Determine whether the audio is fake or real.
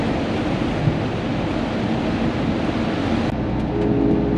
real